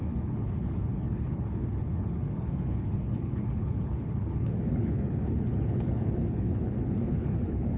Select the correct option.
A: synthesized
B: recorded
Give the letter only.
A